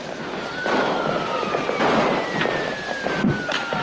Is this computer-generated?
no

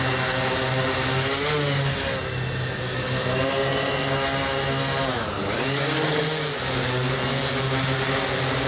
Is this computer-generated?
no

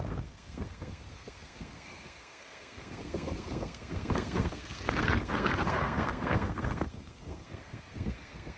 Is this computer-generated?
yes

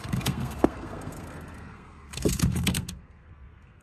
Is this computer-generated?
yes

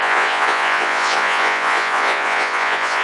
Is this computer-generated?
yes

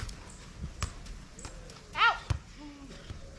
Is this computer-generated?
no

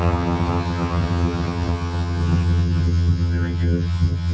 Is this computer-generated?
yes